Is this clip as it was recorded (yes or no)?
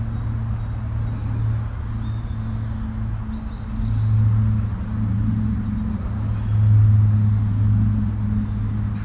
yes